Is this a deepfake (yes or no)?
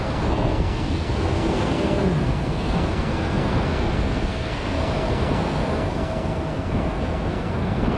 yes